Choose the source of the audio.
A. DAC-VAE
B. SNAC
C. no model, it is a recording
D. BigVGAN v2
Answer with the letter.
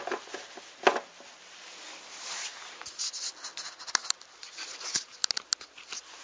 C